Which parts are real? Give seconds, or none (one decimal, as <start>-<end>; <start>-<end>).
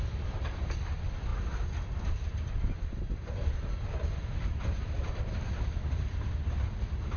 0.0-7.2